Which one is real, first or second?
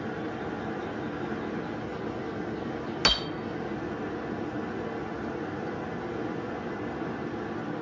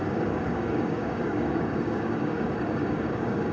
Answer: first